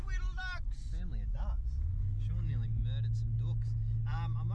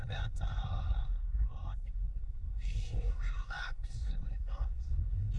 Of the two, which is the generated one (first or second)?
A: second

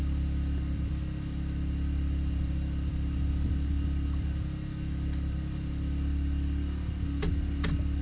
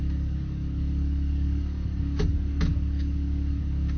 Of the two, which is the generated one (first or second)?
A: second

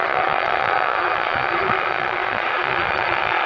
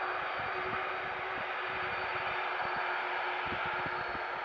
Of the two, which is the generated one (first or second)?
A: first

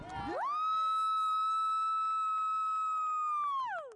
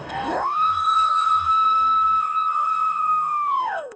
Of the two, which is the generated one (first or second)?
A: second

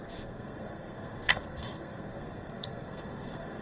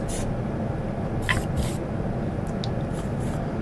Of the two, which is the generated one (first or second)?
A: first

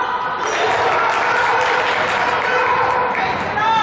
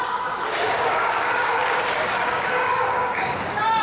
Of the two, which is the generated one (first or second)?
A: second